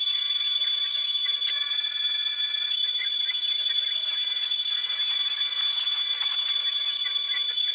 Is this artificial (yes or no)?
yes